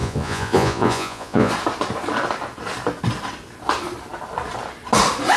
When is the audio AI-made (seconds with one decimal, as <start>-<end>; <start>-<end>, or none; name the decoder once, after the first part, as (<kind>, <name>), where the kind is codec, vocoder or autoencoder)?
0.0-1.5 (vocoder, Vocos)